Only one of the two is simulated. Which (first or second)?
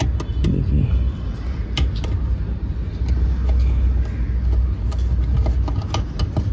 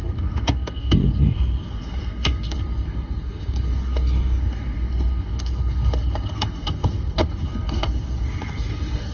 second